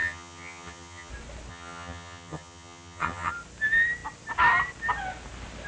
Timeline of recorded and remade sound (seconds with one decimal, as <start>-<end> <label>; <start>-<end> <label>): 0.0-1.1 remade; 1.1-1.5 recorded; 1.5-3.3 remade; 3.3-5.7 recorded